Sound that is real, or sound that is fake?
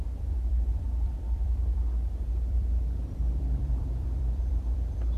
fake